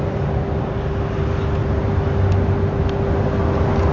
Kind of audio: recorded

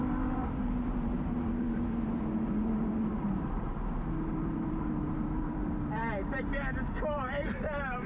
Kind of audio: remade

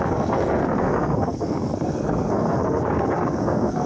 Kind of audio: remade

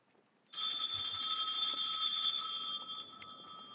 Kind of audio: recorded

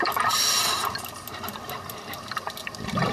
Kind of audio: recorded